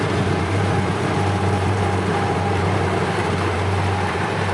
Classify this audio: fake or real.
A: fake